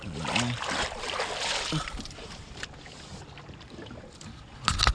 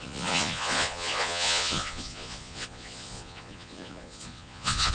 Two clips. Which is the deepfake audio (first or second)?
second